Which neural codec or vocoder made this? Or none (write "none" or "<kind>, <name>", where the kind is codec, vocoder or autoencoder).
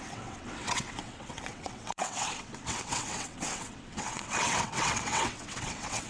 vocoder, WaveNeXt